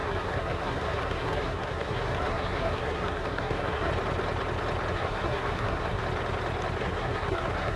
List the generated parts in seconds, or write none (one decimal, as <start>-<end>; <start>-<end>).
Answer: 0.0-3.9; 4.9-6.0; 6.8-7.8